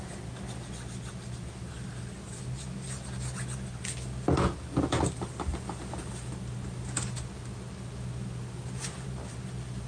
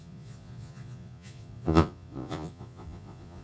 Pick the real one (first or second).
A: first